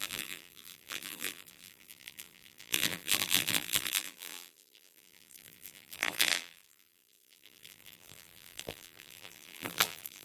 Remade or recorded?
remade